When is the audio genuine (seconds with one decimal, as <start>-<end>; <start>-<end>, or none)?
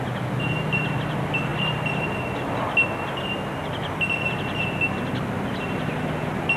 0.0-6.6